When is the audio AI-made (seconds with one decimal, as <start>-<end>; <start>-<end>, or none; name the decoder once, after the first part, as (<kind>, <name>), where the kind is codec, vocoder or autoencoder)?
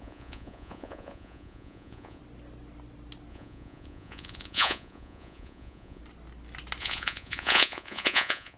0.0-2.2 (vocoder, Vocos); 3.3-6.0; 6.8-8.6